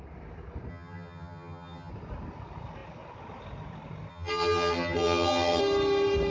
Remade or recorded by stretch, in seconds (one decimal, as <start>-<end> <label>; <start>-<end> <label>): 0.0-0.7 recorded; 0.7-1.9 remade; 1.9-4.1 recorded; 4.1-5.6 remade; 5.6-6.3 recorded